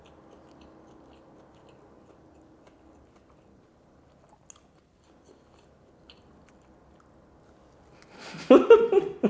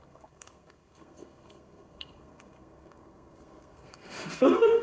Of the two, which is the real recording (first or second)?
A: first